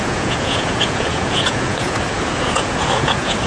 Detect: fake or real fake